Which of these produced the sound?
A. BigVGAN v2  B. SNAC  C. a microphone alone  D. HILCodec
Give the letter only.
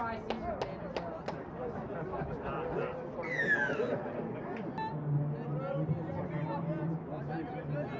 C